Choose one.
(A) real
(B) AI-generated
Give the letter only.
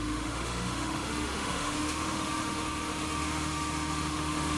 B